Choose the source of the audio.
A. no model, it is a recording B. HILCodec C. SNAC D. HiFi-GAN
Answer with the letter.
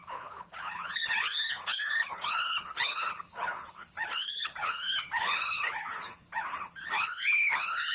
B